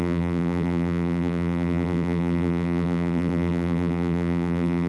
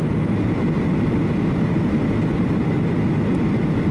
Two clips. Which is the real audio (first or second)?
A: second